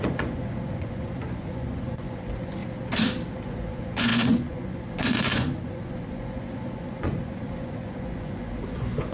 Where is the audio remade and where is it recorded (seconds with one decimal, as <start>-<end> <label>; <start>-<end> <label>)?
0.0-2.6 remade; 2.6-3.3 recorded; 3.3-9.1 remade